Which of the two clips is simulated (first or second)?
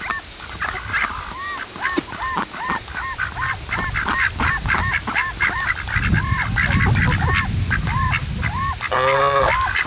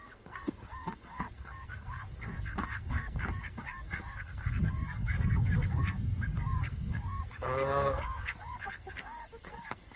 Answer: second